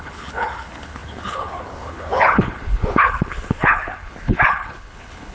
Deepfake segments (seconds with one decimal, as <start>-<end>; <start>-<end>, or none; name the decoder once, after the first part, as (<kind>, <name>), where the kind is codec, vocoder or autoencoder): 0.0-5.3 (codec, HILCodec)